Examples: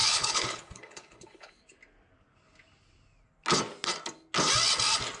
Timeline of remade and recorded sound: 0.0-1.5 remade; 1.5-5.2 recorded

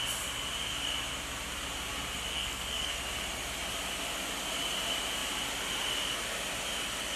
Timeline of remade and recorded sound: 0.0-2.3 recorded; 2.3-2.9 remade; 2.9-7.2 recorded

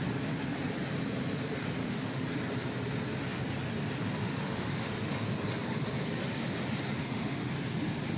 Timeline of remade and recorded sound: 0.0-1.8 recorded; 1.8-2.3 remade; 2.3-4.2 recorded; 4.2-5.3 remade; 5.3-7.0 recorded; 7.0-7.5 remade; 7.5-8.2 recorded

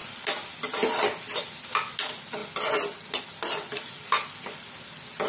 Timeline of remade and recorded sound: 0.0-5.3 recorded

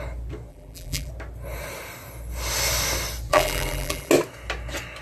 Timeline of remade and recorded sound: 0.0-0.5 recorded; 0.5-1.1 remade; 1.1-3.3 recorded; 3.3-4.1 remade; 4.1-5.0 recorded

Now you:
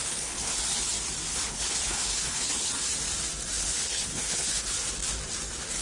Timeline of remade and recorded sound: 0.0-0.6 remade; 0.6-1.3 recorded; 1.3-2.7 remade; 2.7-3.6 recorded; 3.6-4.9 remade; 4.9-5.8 recorded

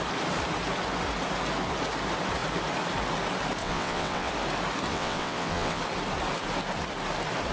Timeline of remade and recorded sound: 0.0-3.6 recorded; 3.6-4.3 remade; 4.3-4.9 recorded; 4.9-5.8 remade; 5.8-7.5 recorded

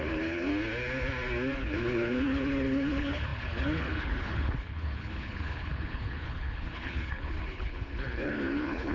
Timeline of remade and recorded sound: 0.0-0.5 remade; 0.5-1.6 recorded; 1.6-8.9 remade